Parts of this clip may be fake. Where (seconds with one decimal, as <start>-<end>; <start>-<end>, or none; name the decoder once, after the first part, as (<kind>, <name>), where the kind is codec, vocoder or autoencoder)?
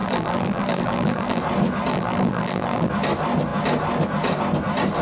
0.0-1.4 (vocoder, BigVGAN v2); 1.9-2.9